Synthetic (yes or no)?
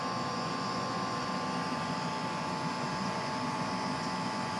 yes